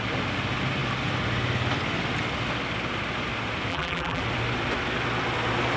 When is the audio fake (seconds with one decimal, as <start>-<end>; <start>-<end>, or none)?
3.7-4.2